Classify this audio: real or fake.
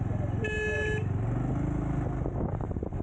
real